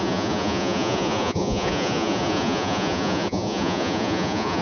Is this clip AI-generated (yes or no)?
yes